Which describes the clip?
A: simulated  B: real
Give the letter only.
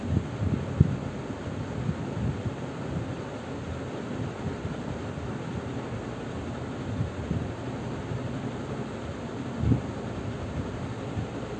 B